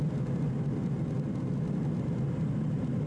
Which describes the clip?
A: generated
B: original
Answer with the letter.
B